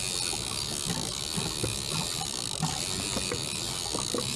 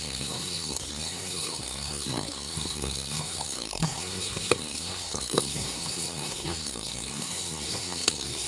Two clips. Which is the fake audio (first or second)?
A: second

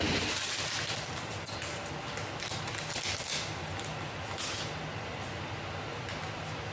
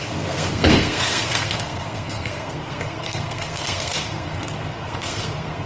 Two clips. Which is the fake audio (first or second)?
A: second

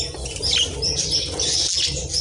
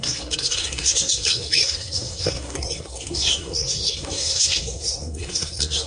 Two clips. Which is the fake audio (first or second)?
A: second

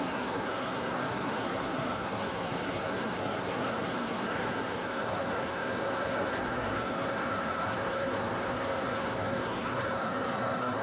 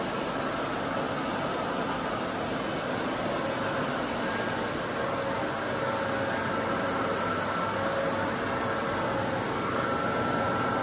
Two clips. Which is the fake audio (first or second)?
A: first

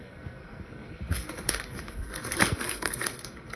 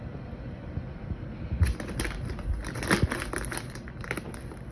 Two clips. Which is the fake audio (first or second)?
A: first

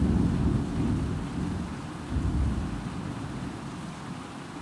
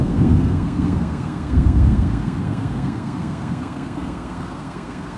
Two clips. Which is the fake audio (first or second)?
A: second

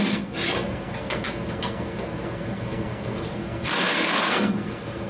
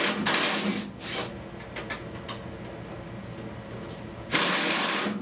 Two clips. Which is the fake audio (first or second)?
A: first